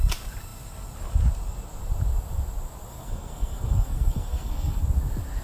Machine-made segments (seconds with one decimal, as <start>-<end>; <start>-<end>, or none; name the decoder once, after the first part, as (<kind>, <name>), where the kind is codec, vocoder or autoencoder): 2.9-4.8 (codec, SNAC)